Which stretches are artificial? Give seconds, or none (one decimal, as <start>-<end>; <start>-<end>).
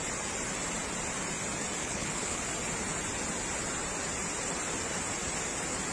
1.8-2.4